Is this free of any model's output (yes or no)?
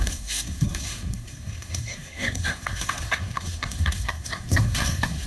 no